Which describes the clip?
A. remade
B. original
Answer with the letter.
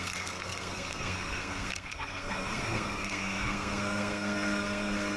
A